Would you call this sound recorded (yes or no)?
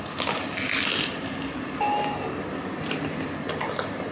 yes